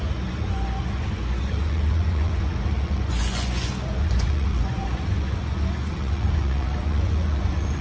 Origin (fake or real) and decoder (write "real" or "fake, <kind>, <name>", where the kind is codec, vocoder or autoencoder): fake, vocoder, Vocos